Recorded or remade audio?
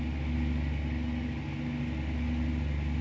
recorded